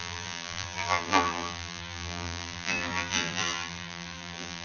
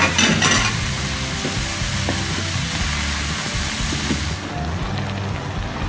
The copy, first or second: first